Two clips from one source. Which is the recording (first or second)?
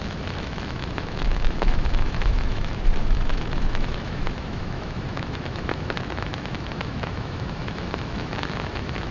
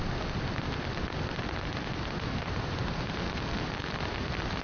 second